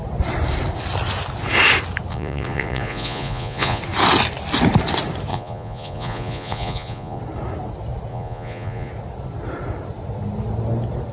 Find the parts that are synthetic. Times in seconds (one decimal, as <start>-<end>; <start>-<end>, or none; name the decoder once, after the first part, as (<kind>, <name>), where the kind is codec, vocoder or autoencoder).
2.1-3.8 (vocoder, Vocos); 5.3-7.2; 8.1-8.9